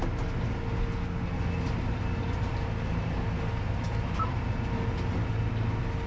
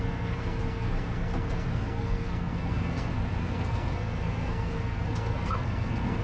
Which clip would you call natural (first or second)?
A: first